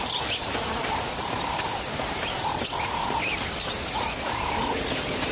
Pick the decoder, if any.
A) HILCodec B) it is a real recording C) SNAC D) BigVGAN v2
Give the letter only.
B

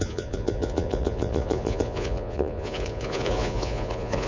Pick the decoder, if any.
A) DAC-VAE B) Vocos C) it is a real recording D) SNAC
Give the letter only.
B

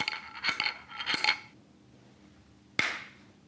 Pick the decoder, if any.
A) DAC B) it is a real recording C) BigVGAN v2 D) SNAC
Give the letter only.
B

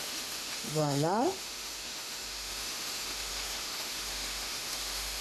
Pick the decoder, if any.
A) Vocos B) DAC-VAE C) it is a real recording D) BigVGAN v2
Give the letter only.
B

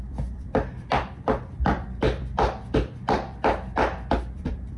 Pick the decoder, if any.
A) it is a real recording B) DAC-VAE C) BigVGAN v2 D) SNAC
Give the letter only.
C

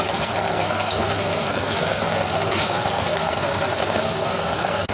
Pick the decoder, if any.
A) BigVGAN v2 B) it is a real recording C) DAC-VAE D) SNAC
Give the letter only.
D